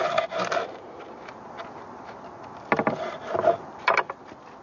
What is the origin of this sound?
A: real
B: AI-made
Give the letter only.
A